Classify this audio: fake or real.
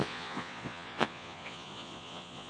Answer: fake